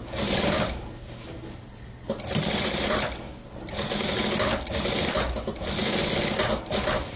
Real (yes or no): yes